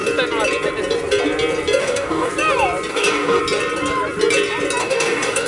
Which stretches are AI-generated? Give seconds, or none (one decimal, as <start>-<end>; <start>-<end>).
1.8-2.3; 2.9-3.4; 4.8-5.5